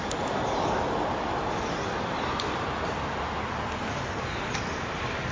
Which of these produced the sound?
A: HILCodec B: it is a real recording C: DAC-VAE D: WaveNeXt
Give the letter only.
B